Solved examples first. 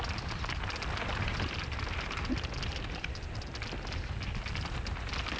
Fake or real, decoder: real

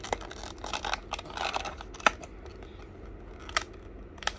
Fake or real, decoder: real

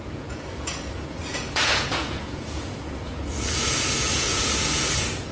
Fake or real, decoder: fake, vocoder, Vocos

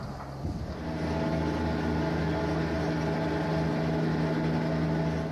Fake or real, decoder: real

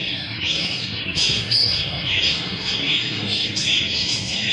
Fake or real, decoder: fake, codec, SNAC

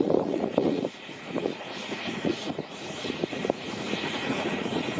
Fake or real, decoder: fake, vocoder, Vocos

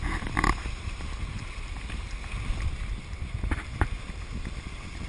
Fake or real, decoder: real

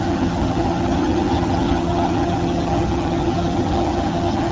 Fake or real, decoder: fake, vocoder, HiFi-GAN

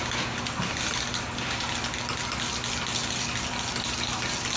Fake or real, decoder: real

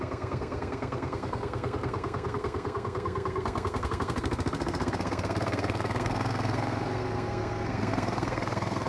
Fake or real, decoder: fake, codec, SNAC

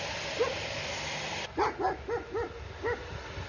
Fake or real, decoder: real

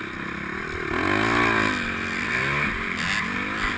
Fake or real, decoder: real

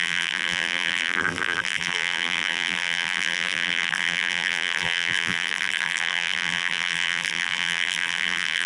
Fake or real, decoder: fake, vocoder, BigVGAN v2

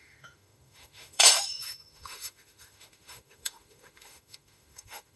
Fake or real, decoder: fake, autoencoder, DAC-VAE